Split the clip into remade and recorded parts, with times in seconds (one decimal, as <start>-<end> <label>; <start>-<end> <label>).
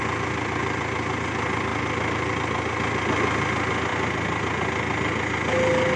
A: 0.0-6.0 recorded